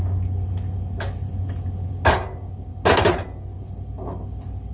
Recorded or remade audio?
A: recorded